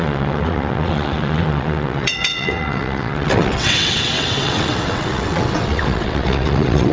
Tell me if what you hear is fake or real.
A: fake